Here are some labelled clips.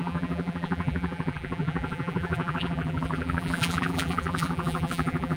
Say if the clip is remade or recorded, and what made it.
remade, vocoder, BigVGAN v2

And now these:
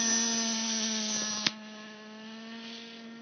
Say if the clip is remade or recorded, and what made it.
recorded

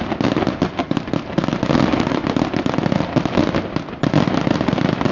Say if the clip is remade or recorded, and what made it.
recorded